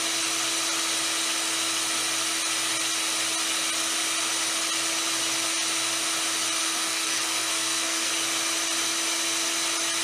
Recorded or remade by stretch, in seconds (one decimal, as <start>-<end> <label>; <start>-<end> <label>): 0.0-6.6 recorded; 6.6-8.1 remade; 8.1-10.0 recorded